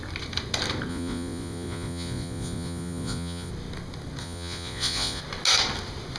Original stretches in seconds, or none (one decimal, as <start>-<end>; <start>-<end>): 0.0-0.9; 3.5-4.2; 5.2-6.2